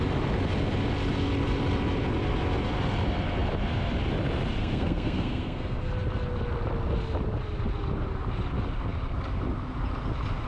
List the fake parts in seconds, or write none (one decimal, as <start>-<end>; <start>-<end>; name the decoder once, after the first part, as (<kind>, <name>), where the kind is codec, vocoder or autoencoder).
4.6-5.9 (codec, SNAC)